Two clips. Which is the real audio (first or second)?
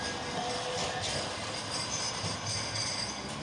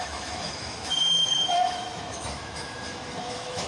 first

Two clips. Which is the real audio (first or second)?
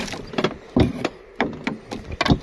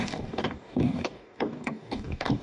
first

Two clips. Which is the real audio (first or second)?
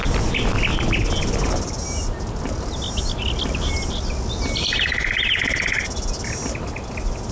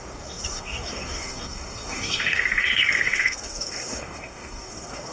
first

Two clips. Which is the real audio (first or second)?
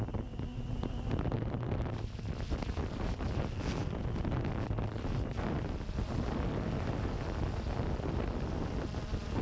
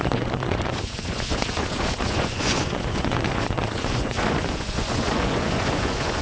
first